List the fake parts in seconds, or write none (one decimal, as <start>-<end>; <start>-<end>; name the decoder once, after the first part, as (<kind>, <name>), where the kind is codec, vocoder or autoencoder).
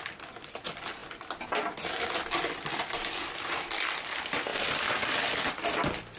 none